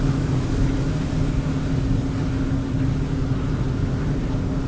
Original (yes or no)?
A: yes